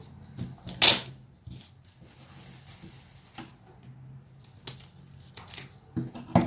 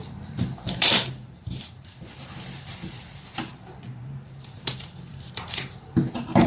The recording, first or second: first